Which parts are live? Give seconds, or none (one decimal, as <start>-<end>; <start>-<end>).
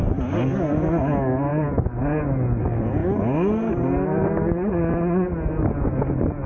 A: 0.0-6.5